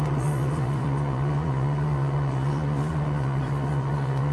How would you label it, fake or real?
fake